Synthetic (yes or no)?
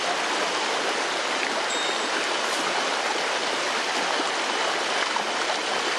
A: no